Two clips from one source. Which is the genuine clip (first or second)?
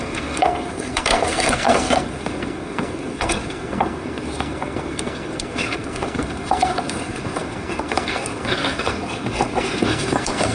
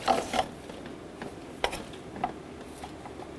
second